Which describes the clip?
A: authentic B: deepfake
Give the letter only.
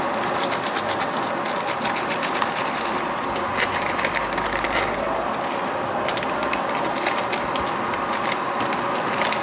A